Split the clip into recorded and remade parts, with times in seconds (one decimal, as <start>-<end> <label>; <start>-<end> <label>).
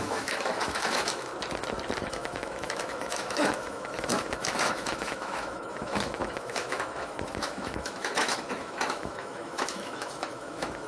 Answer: 0.0-1.3 remade; 1.3-2.0 recorded; 2.0-10.9 remade